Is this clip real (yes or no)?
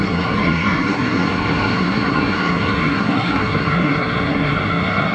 no